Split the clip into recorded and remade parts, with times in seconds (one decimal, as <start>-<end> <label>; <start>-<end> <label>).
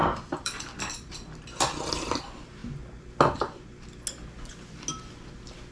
0.0-1.9 remade; 1.9-5.7 recorded